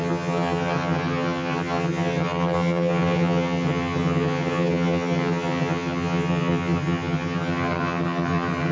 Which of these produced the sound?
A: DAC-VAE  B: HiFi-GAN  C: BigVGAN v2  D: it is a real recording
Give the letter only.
B